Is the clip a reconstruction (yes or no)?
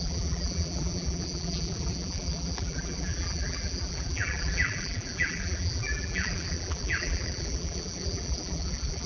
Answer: yes